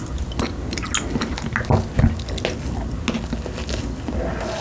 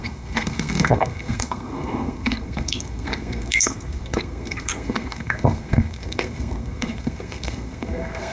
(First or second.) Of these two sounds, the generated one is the second